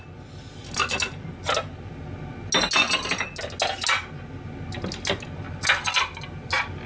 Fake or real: real